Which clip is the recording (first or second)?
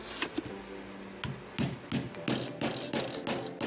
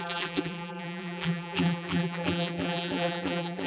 first